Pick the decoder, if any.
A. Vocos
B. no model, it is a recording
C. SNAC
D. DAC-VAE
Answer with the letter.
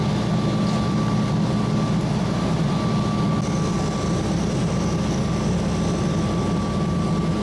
B